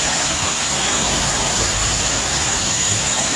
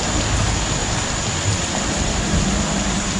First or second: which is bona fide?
second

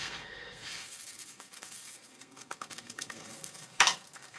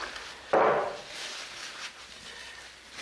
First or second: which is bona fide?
second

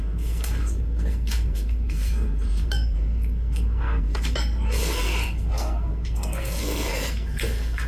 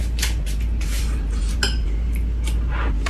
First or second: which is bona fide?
second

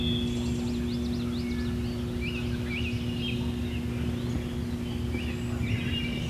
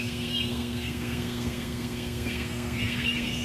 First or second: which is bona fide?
first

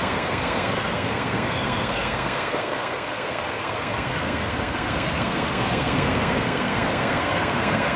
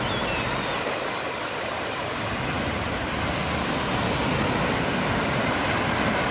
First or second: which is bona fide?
second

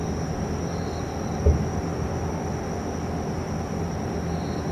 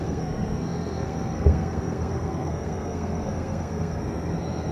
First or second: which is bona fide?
first